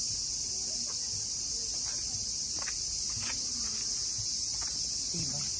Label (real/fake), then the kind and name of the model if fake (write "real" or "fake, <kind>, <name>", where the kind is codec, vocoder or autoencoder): real